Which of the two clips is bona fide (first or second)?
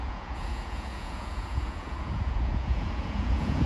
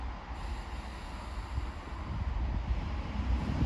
second